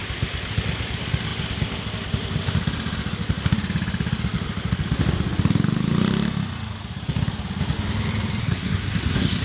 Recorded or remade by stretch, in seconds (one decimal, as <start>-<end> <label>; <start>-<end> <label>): 0.0-8.4 recorded; 8.4-9.4 remade